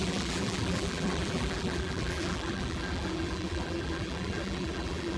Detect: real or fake fake